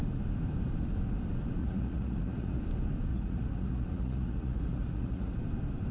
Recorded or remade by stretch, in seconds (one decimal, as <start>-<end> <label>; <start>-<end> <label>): 0.0-1.6 recorded; 1.6-2.6 remade; 2.6-3.1 recorded; 3.1-5.4 remade; 5.4-5.9 recorded